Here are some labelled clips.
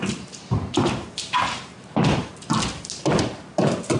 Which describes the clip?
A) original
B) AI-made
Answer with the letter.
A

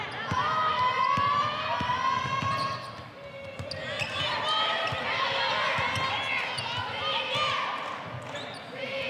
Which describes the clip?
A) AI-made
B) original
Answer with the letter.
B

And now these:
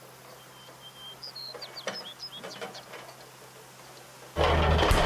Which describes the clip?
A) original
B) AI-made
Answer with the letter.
A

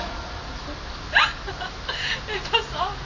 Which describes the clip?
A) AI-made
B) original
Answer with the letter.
B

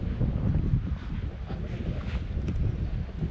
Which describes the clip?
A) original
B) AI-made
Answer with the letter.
A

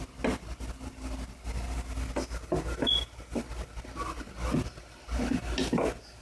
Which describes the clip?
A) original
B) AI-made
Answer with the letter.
A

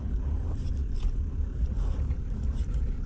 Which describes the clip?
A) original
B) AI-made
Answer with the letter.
A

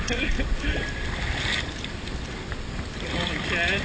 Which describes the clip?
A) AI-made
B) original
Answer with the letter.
B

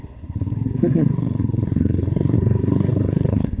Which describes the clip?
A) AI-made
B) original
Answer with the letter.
A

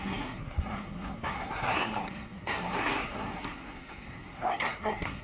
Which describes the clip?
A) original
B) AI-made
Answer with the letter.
B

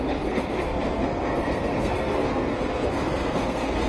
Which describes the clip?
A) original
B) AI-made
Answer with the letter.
B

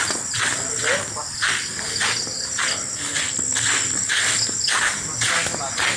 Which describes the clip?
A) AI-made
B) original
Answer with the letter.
B